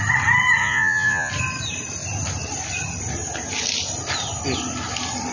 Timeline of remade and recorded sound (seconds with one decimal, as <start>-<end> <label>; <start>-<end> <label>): 0.0-0.6 recorded; 0.6-1.3 remade; 1.3-5.3 recorded